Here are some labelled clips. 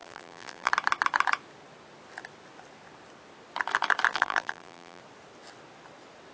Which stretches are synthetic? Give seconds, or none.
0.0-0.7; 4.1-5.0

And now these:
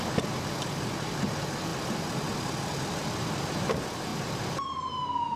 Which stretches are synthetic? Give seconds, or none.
none